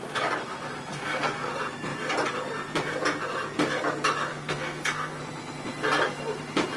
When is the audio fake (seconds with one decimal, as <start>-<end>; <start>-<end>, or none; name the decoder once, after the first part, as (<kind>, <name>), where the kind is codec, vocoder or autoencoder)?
0.9-1.5 (codec, SNAC); 4.3-5.2

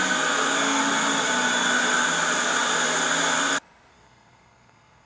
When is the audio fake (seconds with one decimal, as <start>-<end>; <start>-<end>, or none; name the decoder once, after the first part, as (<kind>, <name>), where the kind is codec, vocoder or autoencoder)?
0.0-0.8 (codec, SNAC); 3.9-5.1

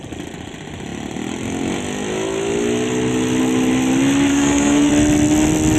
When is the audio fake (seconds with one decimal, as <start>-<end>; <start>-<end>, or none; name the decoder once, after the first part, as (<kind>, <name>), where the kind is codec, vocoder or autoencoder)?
4.3-4.9 (codec, SNAC)

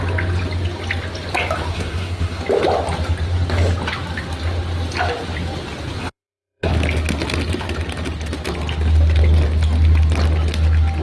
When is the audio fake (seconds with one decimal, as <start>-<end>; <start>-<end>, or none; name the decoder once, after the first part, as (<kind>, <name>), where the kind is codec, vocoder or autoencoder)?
1.7-2.4 (codec, SNAC); 6.0-6.7

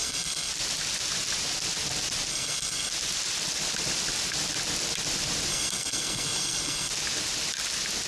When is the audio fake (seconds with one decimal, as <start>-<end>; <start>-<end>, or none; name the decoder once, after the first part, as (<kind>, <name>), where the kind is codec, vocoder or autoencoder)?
0.0-0.5 (codec, SNAC); 2.3-2.9; 5.5-6.9

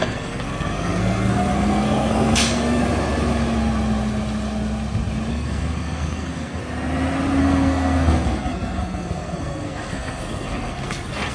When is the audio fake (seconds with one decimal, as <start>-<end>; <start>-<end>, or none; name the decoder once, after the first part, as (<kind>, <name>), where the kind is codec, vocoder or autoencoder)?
0.0-2.8 (codec, SNAC); 5.3-6.6; 7.4-11.3

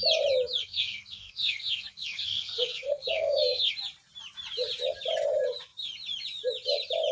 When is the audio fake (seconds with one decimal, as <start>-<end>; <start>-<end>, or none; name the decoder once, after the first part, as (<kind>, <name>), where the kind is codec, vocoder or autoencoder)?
0.6-3.7 (codec, SNAC)